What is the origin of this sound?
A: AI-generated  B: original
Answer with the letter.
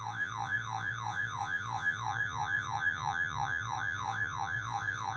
A